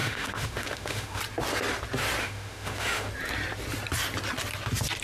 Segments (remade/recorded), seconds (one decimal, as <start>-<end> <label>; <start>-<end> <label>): 0.0-1.2 remade; 1.2-2.2 recorded; 2.2-3.1 remade; 3.1-5.0 recorded